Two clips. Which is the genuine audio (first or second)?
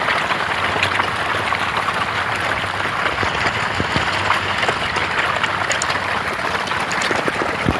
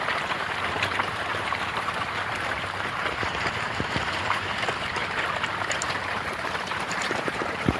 first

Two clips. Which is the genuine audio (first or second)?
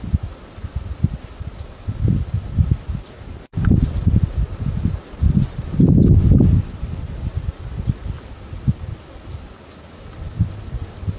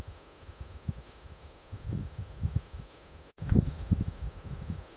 first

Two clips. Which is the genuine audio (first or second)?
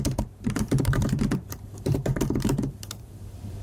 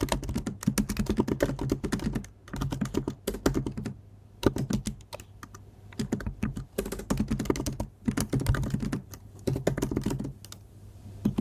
second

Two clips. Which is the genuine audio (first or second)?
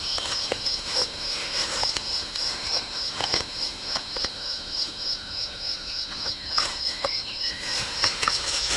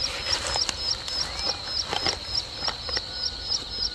second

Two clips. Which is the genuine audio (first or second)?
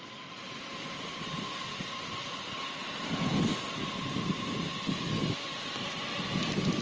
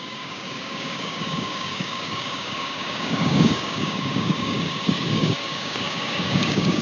first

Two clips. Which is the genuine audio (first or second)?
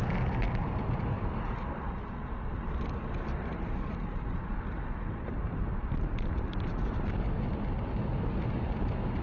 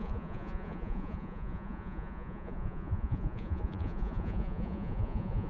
first